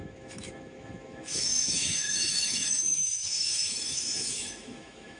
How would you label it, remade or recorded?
remade